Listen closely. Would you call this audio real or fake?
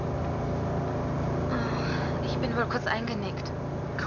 real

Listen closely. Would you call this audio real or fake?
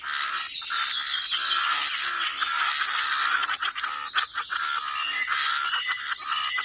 real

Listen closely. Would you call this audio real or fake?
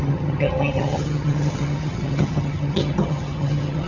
fake